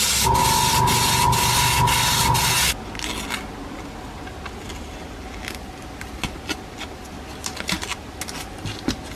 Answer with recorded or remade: recorded